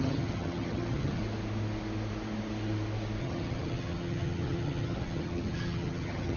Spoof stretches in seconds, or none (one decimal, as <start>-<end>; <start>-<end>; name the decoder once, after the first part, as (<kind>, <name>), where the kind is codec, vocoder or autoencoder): 0.0-1.2 (vocoder, HiFi-GAN); 3.2-6.4